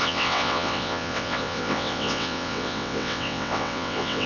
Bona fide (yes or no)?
no